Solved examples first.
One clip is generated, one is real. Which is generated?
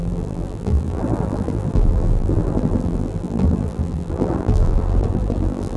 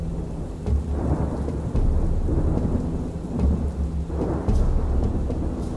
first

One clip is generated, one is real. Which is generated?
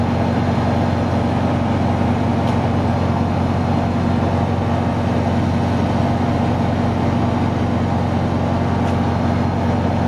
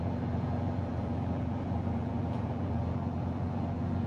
second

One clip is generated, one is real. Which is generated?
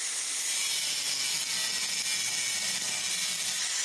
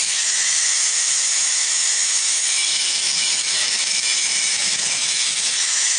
second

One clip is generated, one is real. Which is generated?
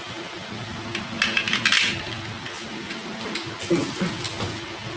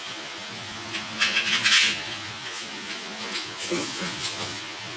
second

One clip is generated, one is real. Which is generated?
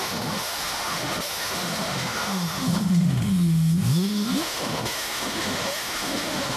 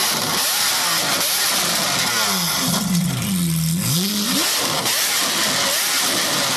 first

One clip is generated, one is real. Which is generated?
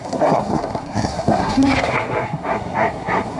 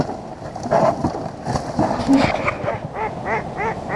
first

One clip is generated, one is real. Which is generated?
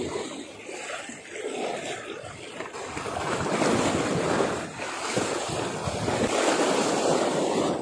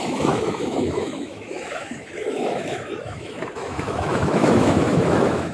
second